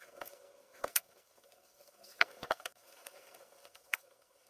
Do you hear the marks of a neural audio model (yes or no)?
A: yes